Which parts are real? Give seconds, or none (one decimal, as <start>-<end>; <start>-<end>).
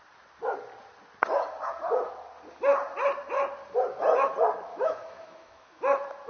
0.0-4.7; 5.8-6.3